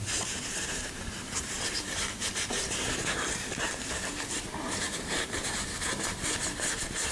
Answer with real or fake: fake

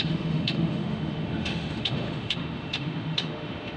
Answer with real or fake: fake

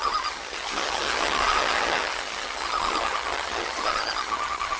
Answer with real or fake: fake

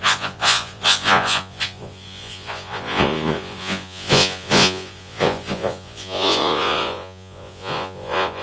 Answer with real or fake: fake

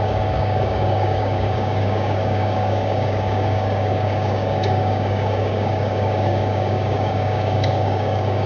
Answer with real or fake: fake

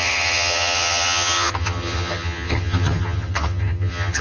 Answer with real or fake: fake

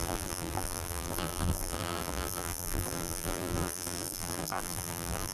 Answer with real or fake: fake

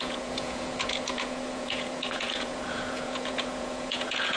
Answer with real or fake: fake